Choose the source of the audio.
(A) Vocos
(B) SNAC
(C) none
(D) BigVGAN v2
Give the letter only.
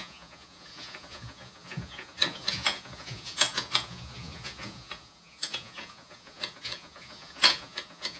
A